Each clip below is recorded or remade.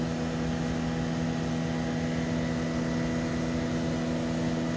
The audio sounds recorded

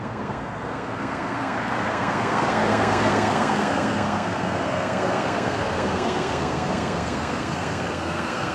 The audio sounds remade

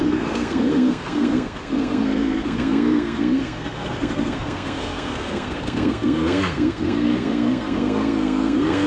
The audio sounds remade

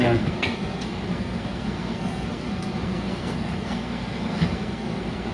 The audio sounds remade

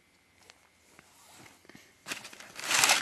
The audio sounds recorded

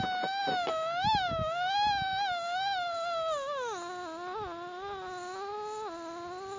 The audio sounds recorded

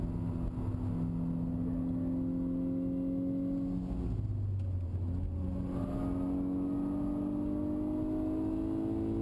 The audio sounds recorded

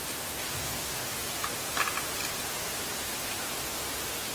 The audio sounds recorded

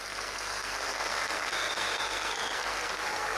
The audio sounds remade